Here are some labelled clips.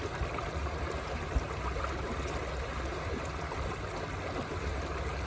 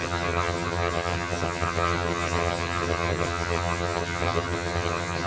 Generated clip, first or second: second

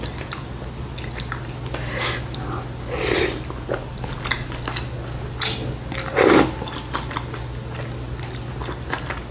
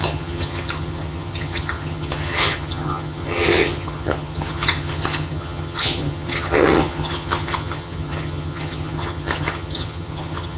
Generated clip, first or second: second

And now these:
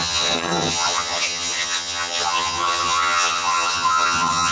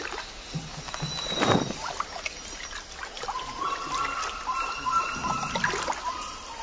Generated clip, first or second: first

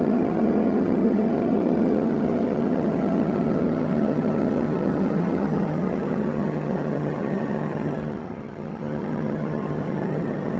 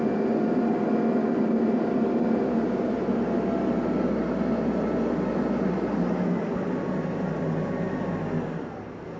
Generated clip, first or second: first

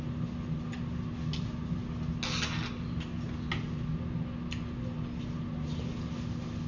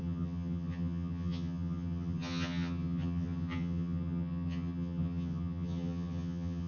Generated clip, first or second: second